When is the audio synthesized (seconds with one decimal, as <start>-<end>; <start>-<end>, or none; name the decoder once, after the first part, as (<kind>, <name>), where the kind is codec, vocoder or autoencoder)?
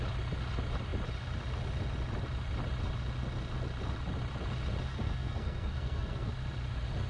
4.9-6.3 (codec, SNAC)